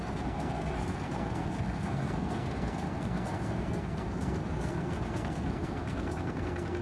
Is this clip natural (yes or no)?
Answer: no